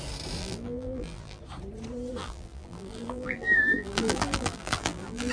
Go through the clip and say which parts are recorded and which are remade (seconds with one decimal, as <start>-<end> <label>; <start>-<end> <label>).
0.0-0.4 recorded; 0.4-1.4 remade; 1.4-2.2 recorded; 2.2-5.3 remade